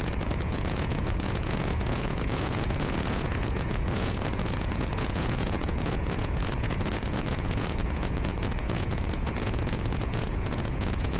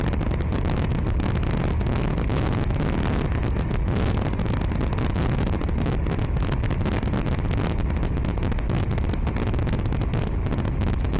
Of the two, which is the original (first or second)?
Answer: second